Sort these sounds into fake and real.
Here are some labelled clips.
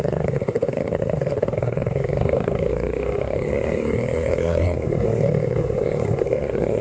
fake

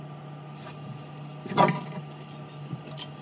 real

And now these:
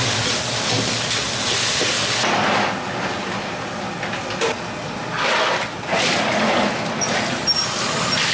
real